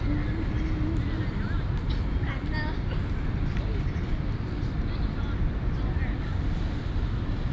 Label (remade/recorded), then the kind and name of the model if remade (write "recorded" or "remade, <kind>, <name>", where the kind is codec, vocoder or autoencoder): recorded